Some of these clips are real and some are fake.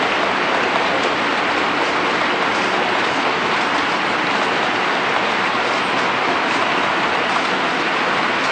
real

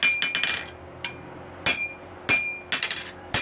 real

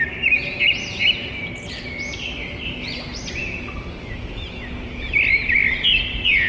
real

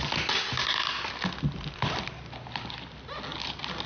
real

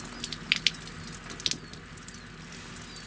real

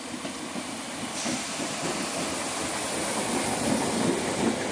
real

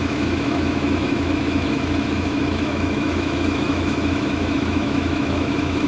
fake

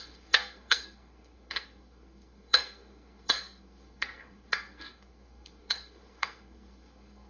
fake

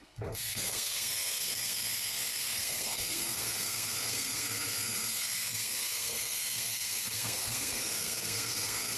fake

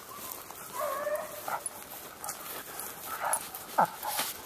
real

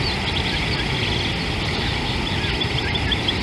real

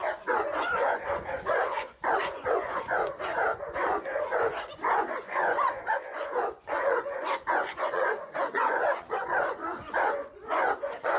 fake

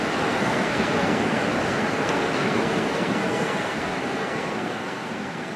fake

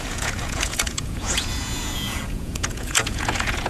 fake